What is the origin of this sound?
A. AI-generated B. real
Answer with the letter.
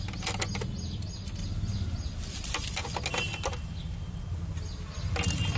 B